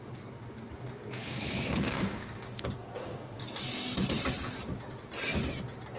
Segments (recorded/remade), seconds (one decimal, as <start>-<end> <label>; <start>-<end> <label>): 0.0-1.0 recorded; 1.0-3.4 remade; 3.4-6.0 recorded